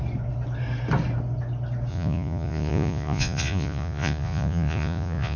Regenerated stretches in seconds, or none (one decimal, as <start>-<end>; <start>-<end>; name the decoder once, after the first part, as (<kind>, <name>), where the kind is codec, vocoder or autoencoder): 1.9-5.4 (vocoder, Vocos)